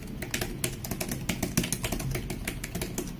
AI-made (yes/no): no